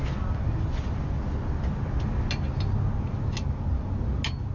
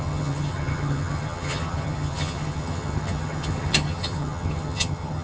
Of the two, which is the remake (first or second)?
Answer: second